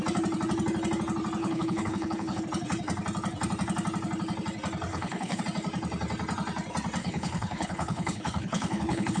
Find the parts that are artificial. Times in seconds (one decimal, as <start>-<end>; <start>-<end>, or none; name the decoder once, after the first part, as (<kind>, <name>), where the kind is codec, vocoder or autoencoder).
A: 1.4-2.4 (codec, HILCodec); 4.9-5.4; 7.0-9.2